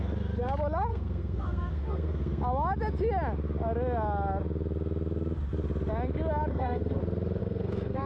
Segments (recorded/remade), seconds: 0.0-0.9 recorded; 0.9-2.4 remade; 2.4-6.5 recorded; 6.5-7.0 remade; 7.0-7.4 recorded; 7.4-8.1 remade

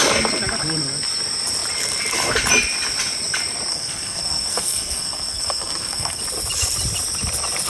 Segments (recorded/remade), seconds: 0.0-3.7 recorded; 3.7-6.2 remade; 6.2-7.7 recorded

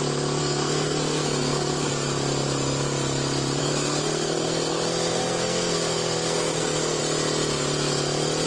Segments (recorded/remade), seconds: 0.0-0.4 recorded; 0.4-1.9 remade; 1.9-3.6 recorded; 3.6-7.0 remade; 7.0-8.5 recorded

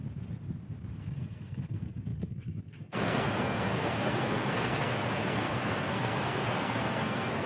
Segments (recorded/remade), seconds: 0.0-1.0 recorded; 1.0-7.5 remade

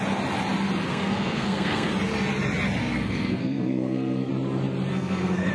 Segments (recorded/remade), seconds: 0.0-0.9 recorded; 0.9-1.9 remade; 1.9-2.8 recorded; 2.8-4.3 remade; 4.3-4.9 recorded; 4.9-5.5 remade

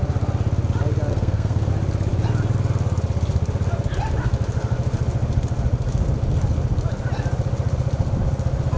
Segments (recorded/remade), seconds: 0.0-1.1 recorded; 1.1-1.7 remade; 1.7-8.8 recorded

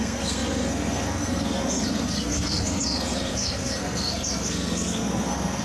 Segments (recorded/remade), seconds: 0.0-5.6 remade